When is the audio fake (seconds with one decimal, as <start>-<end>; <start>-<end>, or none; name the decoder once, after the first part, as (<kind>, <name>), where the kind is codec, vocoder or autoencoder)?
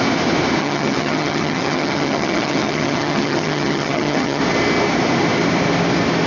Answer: 0.6-4.4 (vocoder, HiFi-GAN)